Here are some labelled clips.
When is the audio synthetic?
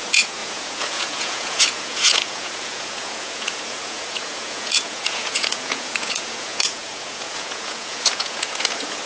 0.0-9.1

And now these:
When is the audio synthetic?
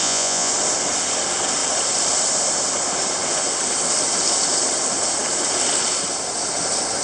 0.0-0.5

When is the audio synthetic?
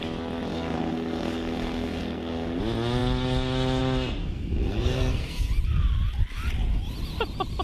0.5-2.6; 4.2-5.5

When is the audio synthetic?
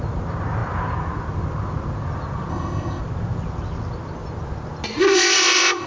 2.5-3.0; 5.0-5.9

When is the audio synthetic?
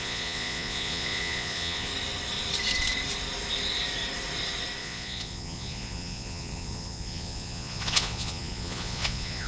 0.0-1.9; 4.8-9.5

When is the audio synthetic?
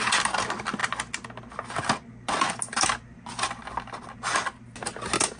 none